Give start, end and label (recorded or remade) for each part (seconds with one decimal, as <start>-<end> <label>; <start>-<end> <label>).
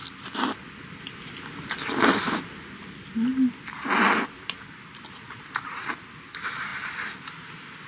0.0-6.7 recorded; 6.7-7.3 remade; 7.3-7.9 recorded